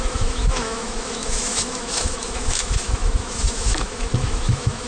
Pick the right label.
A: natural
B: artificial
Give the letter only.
B